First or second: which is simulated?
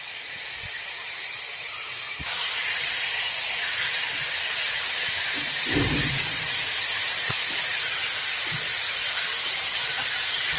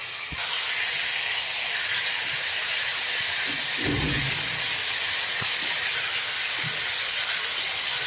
first